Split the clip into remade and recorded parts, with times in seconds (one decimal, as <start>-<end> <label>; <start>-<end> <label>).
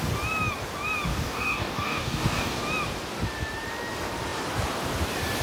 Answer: 0.0-1.1 recorded; 1.1-2.6 remade; 2.6-5.4 recorded